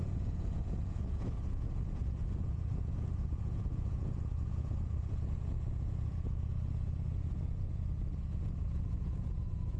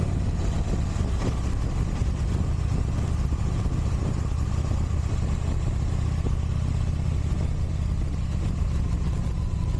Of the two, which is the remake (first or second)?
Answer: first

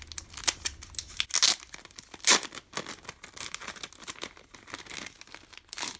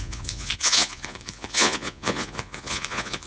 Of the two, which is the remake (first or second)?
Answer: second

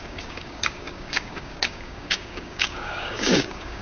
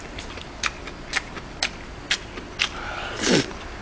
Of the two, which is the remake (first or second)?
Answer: first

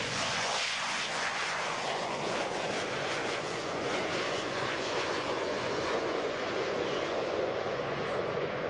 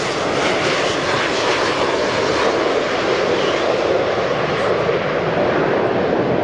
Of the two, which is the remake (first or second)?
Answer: first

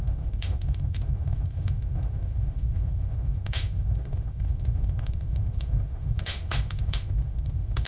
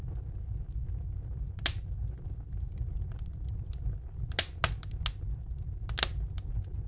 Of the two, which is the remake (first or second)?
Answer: first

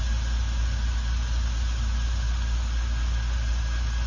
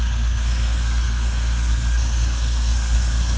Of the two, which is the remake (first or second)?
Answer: second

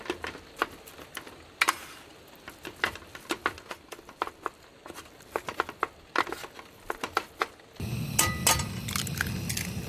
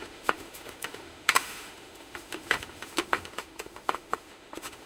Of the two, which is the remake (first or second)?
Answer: second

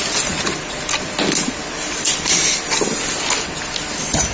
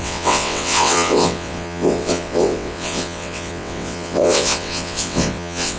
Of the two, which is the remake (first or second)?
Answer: second